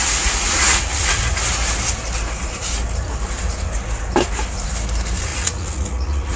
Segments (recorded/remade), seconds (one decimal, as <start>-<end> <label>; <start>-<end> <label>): 0.0-1.2 remade; 1.2-5.3 recorded; 5.3-6.4 remade